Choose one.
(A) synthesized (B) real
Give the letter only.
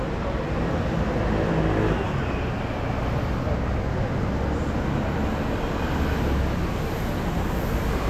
B